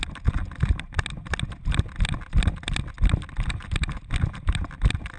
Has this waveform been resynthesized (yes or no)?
no